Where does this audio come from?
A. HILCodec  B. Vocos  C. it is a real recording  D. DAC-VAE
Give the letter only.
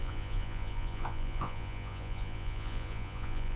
B